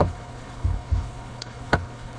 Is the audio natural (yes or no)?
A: no